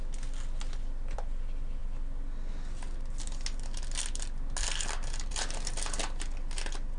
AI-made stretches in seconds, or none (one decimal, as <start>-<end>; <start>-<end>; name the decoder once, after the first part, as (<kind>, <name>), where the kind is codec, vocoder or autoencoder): none